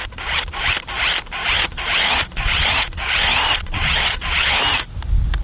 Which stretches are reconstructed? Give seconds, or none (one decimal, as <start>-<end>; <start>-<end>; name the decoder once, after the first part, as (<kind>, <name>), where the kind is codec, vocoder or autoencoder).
0.0-0.6 (vocoder, Vocos); 1.4-4.6